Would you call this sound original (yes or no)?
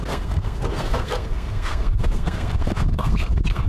no